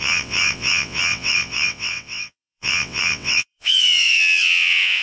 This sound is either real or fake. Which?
fake